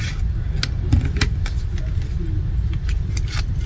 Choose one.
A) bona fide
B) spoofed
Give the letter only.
A